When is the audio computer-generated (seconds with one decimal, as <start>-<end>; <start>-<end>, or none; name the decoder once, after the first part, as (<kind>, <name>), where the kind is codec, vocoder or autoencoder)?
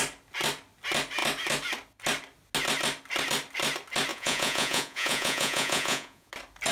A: 4.1-6.3 (vocoder, Vocos)